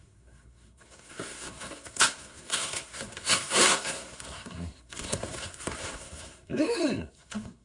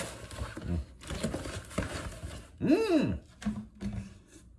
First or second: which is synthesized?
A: first